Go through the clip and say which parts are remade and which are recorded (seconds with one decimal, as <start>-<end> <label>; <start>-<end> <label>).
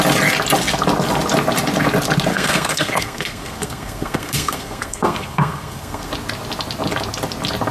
0.0-2.3 recorded; 2.3-6.1 remade; 6.1-7.7 recorded